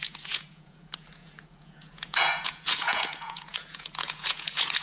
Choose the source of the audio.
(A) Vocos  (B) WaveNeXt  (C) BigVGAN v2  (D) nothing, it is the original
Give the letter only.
A